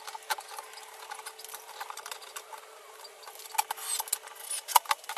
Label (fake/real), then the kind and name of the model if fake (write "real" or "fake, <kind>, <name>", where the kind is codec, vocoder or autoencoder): real